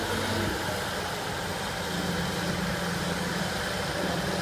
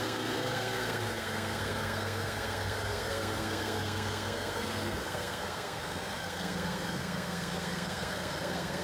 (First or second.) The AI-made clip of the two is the second